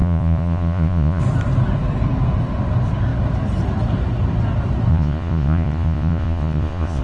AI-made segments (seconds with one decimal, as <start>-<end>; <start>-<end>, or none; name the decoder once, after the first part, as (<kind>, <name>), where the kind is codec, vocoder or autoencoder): 0.0-1.2 (vocoder, Vocos); 4.9-7.0